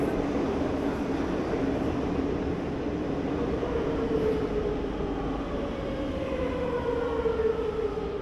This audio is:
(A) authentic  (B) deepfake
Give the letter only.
A